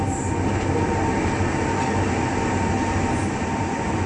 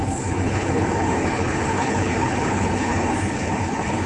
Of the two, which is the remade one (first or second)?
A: second